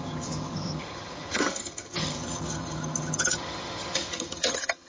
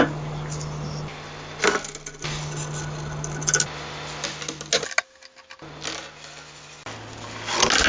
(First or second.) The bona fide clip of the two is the second